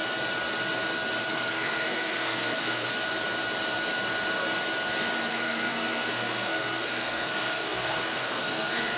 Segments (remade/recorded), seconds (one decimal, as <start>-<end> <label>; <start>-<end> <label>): 0.0-1.3 recorded; 1.3-2.9 remade; 2.9-5.3 recorded; 5.3-9.0 remade